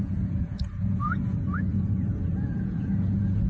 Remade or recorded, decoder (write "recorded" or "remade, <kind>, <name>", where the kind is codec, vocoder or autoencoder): remade, vocoder, Vocos